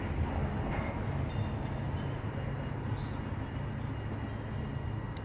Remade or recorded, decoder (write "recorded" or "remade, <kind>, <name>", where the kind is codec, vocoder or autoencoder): recorded